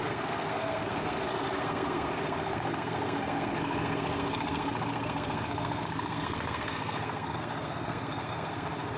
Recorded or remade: remade